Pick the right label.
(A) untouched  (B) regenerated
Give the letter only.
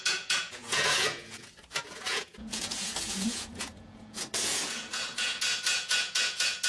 B